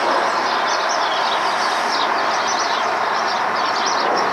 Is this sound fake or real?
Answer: real